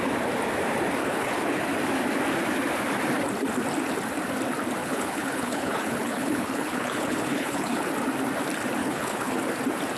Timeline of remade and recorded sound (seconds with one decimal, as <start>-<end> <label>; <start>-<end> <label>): 0.0-1.0 recorded; 1.0-1.6 remade; 1.6-4.8 recorded; 4.8-7.8 remade; 7.8-8.8 recorded; 8.8-9.4 remade; 9.4-10.0 recorded